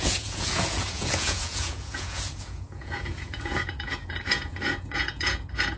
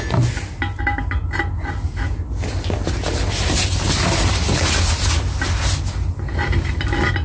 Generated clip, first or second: first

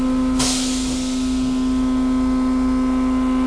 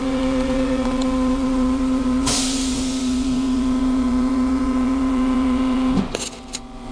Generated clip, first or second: second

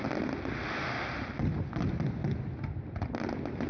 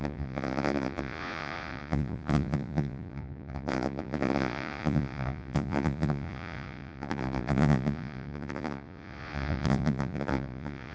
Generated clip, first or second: second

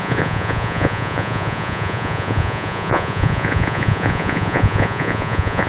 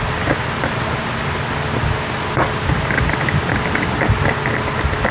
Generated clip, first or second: first